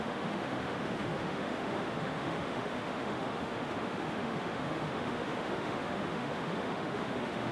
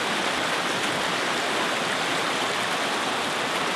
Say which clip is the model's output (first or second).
first